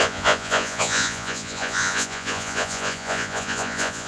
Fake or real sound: fake